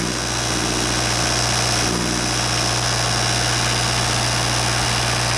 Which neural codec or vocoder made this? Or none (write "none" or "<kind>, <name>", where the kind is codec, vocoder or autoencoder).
none